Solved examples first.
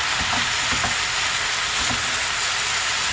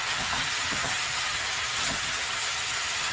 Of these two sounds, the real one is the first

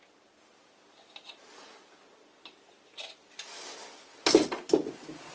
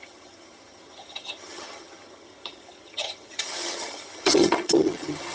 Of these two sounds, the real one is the first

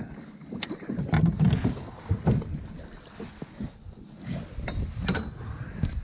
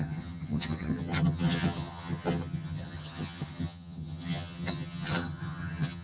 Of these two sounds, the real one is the first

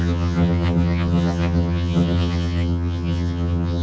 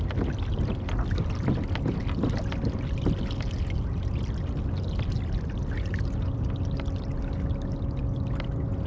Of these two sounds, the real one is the second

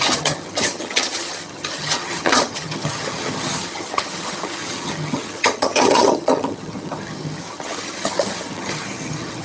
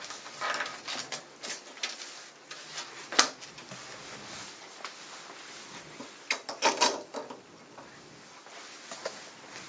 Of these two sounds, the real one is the second